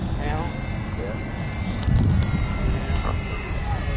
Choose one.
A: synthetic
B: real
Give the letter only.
B